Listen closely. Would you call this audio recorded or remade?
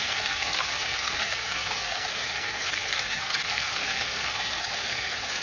remade